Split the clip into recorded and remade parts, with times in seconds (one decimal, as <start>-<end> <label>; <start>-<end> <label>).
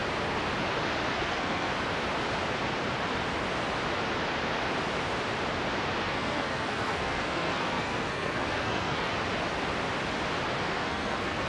0.0-1.1 recorded; 1.1-1.7 remade; 1.7-6.0 recorded; 6.0-9.1 remade; 9.1-10.6 recorded; 10.6-11.5 remade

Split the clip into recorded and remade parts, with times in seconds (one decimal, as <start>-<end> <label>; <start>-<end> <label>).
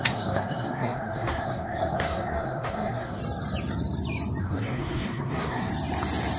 0.0-3.2 remade; 3.2-4.4 recorded; 4.4-5.7 remade; 5.7-6.4 recorded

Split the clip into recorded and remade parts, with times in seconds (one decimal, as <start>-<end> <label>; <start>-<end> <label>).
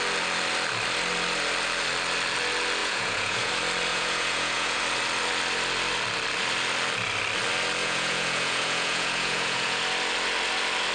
0.0-2.8 recorded; 2.8-3.5 remade; 3.5-3.9 recorded; 3.9-4.8 remade; 4.8-7.8 recorded; 7.8-9.8 remade; 9.8-10.9 recorded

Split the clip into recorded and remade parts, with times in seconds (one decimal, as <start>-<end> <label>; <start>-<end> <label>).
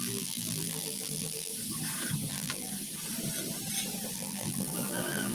0.0-1.5 remade; 1.5-2.3 recorded; 2.3-2.7 remade; 2.7-4.1 recorded; 4.1-5.3 remade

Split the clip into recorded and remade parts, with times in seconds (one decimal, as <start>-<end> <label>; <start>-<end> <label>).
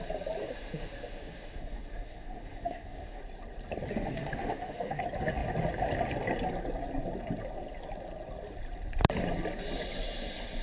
0.0-0.4 recorded; 0.4-3.2 remade; 3.2-3.9 recorded; 3.9-5.0 remade; 5.0-10.6 recorded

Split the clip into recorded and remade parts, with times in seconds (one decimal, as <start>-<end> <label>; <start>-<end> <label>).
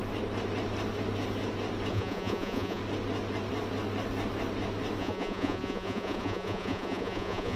0.0-1.9 recorded; 1.9-2.8 remade; 2.8-5.0 recorded; 5.0-7.6 remade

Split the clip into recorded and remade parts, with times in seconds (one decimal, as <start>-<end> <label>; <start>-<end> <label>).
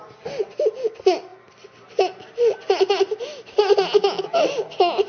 0.0-5.1 recorded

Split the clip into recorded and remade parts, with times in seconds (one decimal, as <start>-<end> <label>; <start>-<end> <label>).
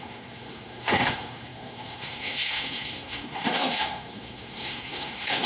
0.0-5.5 remade